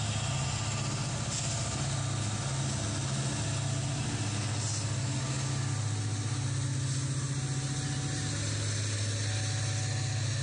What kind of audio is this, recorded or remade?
recorded